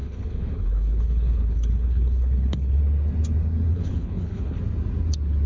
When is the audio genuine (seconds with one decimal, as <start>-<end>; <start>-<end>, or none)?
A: 2.8-3.7; 4.6-5.5